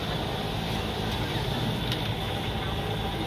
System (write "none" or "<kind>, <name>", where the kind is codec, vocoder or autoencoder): vocoder, BigVGAN v2